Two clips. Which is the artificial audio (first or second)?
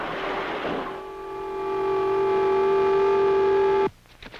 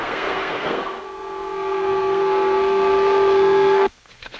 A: second